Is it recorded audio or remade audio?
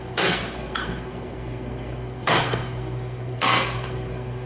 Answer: remade